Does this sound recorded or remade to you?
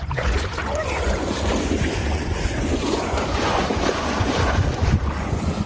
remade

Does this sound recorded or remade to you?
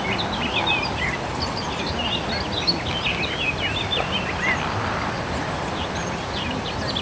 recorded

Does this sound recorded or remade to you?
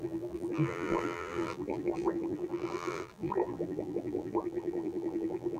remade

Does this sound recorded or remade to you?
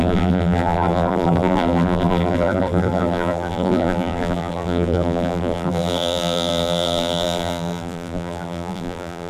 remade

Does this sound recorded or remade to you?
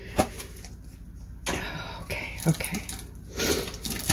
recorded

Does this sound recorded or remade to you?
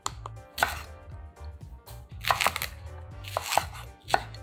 recorded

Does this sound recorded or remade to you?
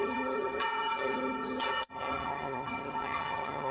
remade